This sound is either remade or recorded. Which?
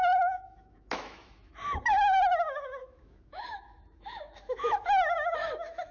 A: remade